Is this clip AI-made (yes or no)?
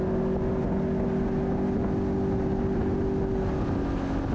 no